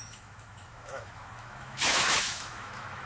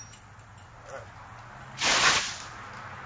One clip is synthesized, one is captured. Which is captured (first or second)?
second